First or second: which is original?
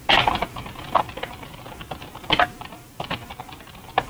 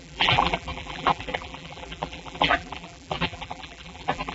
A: first